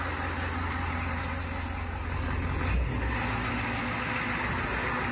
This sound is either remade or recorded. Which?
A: recorded